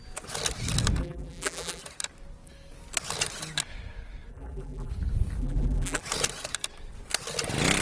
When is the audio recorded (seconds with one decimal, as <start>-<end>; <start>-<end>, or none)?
0.0-1.0; 1.8-4.3; 4.9-5.4; 6.0-7.8